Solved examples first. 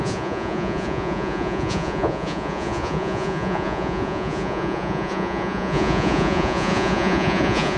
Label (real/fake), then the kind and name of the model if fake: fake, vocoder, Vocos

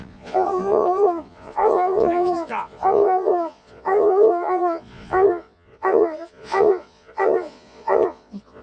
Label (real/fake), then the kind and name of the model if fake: fake, vocoder, Vocos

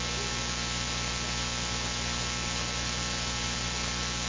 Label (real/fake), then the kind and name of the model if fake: real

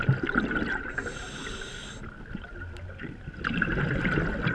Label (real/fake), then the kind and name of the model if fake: real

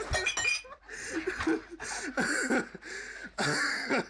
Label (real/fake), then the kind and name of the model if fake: real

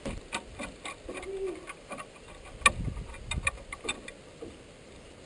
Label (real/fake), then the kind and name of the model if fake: real